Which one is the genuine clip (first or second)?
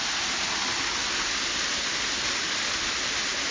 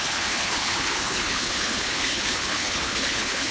first